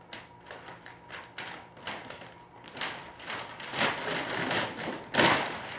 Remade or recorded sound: recorded